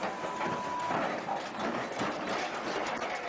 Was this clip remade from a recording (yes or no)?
no